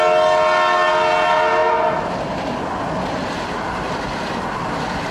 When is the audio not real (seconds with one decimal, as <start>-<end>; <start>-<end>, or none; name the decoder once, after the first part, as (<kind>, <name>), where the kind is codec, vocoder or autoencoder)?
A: none